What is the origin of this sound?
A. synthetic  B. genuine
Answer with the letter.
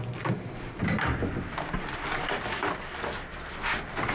B